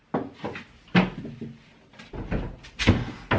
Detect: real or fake real